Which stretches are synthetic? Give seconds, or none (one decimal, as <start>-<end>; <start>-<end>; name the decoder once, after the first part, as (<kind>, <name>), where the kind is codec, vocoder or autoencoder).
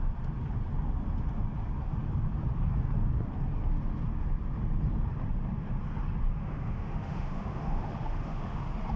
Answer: 6.4-8.6 (autoencoder, DAC-VAE)